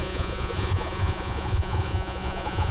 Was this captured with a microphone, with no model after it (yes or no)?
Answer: no